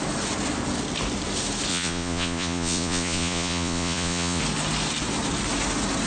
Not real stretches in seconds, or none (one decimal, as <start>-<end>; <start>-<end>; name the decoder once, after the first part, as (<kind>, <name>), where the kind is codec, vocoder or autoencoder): 1.7-4.4 (vocoder, Vocos)